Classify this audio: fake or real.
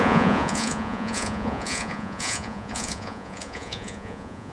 fake